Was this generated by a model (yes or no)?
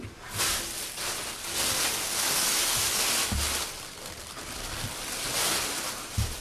no